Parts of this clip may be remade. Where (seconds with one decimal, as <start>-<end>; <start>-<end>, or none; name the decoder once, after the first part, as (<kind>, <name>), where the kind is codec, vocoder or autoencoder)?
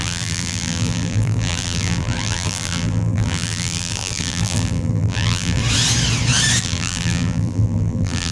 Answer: 0.0-5.6 (vocoder, BigVGAN v2); 6.6-8.3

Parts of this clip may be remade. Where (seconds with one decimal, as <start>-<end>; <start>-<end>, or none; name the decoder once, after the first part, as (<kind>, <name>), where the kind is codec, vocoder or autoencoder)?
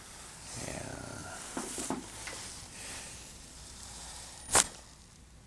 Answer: 1.2-4.5 (vocoder, BigVGAN v2)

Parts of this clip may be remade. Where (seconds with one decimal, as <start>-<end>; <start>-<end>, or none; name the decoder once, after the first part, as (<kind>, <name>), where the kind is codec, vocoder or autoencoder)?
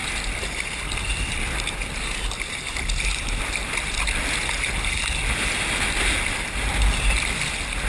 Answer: none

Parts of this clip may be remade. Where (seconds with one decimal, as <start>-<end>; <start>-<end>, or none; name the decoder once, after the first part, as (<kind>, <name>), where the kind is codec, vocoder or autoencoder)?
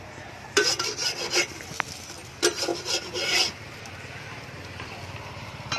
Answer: 0.0-1.0 (vocoder, BigVGAN v2); 2.3-5.8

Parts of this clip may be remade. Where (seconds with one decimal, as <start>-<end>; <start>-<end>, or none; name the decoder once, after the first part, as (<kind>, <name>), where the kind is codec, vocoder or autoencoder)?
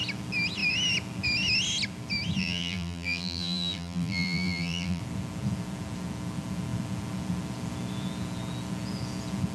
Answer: 2.4-5.0 (vocoder, BigVGAN v2)